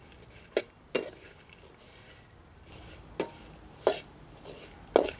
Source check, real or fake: real